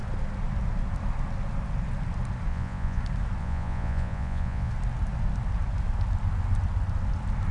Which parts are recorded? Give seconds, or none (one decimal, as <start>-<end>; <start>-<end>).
0.0-2.5; 3.0-3.4; 4.7-7.5

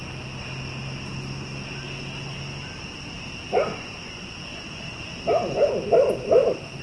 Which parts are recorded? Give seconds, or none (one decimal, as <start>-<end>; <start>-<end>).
0.0-3.7; 5.0-6.8

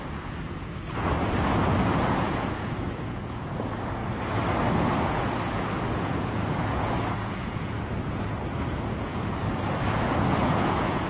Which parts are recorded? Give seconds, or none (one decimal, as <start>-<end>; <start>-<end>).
4.0-4.7

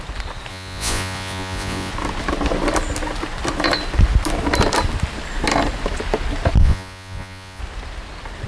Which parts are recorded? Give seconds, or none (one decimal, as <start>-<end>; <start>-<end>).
0.0-0.5; 1.9-6.6; 7.6-8.5

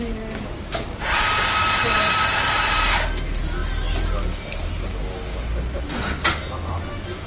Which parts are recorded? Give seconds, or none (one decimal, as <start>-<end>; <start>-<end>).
0.0-7.3

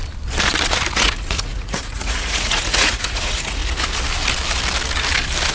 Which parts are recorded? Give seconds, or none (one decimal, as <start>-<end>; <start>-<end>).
0.0-0.9; 3.6-5.5

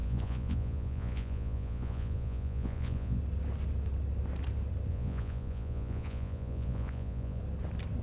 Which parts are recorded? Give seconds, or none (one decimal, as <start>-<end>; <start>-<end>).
3.2-4.9; 7.4-8.0